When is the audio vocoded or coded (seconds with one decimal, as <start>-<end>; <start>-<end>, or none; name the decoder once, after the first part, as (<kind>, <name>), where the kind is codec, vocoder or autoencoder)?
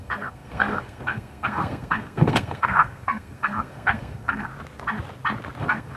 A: 0.0-4.5 (codec, SNAC); 5.6-6.0